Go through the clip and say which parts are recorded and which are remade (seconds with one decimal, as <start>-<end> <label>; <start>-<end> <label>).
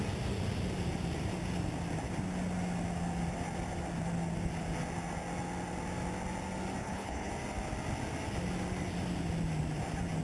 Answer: 0.0-6.8 recorded; 6.8-7.3 remade; 7.3-10.2 recorded